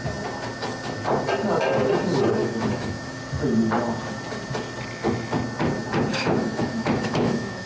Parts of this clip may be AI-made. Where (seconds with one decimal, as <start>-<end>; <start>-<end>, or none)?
2.4-3.2; 6.1-7.7